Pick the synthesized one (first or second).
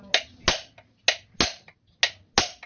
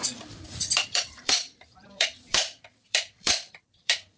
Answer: second